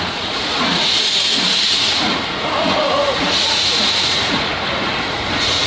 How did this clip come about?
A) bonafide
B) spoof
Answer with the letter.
B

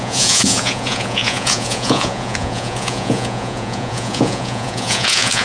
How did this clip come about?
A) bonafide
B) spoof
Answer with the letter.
B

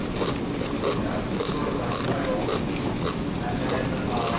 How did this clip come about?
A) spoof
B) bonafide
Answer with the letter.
B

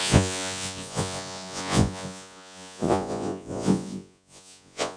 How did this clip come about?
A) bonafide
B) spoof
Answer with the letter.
B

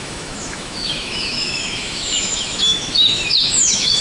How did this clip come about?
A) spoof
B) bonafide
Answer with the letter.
A